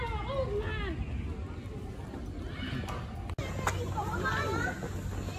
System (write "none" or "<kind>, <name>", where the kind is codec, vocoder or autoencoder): none